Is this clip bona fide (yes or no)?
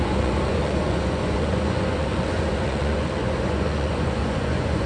no